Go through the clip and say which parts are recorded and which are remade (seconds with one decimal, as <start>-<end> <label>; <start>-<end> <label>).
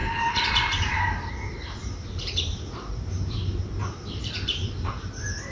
0.0-1.3 remade; 1.3-1.8 recorded; 1.8-5.1 remade; 5.1-5.5 recorded